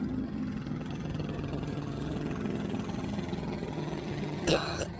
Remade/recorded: remade